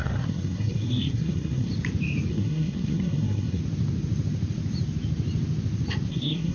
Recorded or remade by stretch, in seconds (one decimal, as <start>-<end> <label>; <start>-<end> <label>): 0.0-1.7 remade; 1.7-2.3 recorded; 2.3-3.6 remade; 3.6-6.1 recorded; 6.1-6.5 remade